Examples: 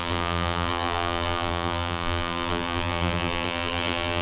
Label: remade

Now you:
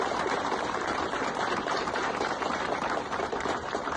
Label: remade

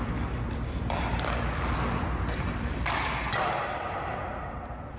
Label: remade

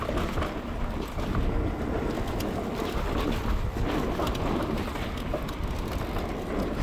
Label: recorded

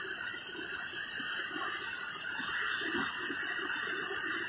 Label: recorded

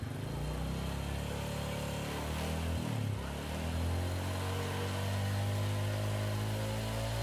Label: recorded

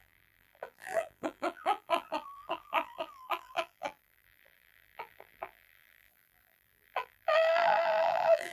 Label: remade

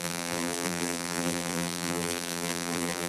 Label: remade